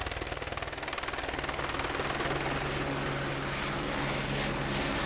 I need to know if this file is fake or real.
real